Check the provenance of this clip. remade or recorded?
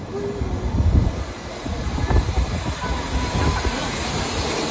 recorded